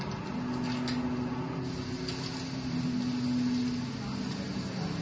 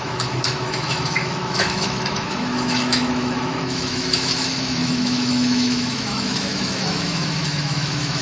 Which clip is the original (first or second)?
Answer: first